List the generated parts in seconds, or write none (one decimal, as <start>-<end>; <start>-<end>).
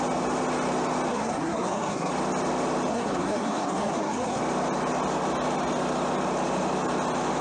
1.1-2.1; 2.9-4.4